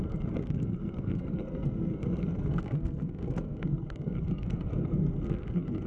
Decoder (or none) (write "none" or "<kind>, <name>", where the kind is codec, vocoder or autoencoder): codec, SNAC